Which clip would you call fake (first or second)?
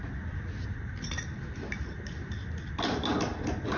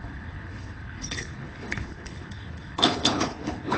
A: second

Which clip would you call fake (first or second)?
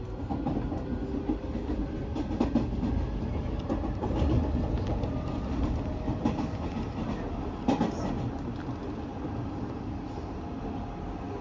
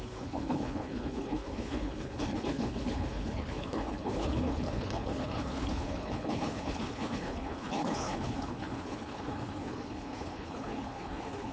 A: second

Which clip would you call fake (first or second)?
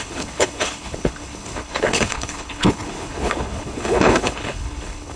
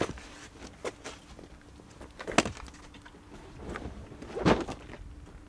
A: first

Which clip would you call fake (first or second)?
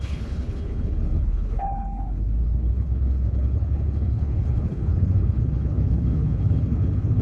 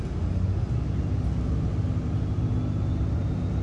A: first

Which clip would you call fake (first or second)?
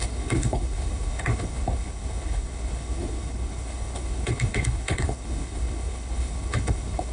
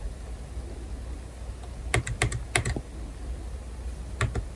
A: first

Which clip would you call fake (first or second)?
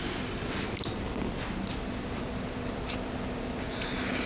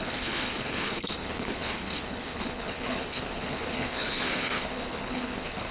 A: second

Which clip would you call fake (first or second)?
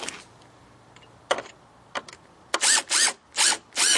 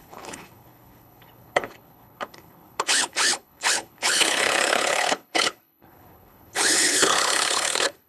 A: second